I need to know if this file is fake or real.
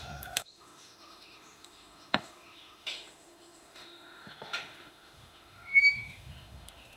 fake